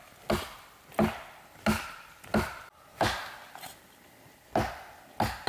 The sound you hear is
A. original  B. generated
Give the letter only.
A